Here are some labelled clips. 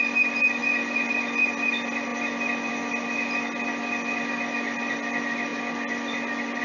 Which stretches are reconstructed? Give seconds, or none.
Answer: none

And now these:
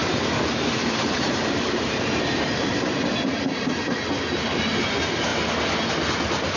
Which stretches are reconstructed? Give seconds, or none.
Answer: 0.0-4.0

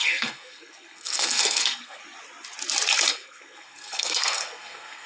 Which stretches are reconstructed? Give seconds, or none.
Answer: 0.0-2.0; 3.1-5.1